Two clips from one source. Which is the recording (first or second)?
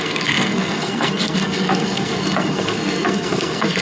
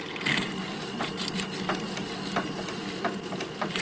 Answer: second